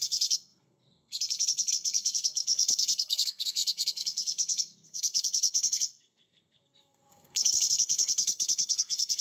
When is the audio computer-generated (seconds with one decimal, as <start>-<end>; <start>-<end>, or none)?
0.0-9.2